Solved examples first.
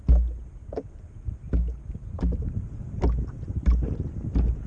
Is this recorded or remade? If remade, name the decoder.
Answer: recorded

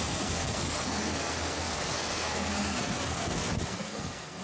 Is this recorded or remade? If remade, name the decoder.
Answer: remade, codec, SNAC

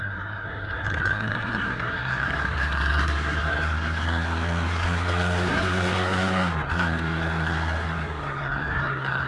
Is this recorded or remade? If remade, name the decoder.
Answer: remade, codec, SNAC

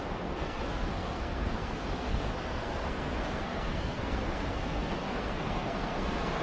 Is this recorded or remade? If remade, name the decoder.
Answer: remade, codec, SNAC